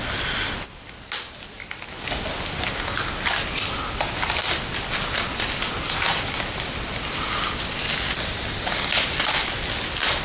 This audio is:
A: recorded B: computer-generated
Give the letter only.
A